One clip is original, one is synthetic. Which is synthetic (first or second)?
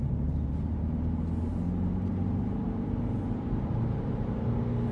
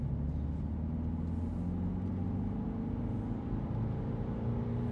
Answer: first